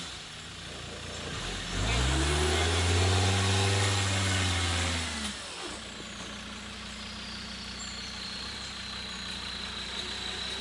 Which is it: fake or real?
real